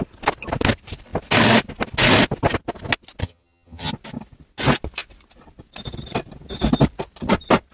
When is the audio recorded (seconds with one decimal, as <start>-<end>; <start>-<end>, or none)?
0.0-3.2; 3.9-7.7